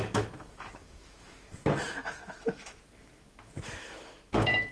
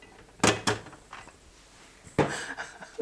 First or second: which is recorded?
second